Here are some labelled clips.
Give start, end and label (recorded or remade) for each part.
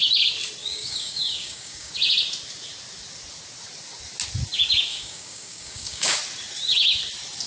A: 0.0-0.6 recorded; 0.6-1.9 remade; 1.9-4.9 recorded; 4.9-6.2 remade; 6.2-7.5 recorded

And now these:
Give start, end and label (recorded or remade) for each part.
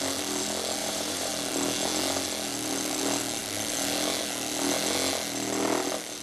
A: 0.0-0.8 recorded; 0.8-1.3 remade; 1.3-6.2 recorded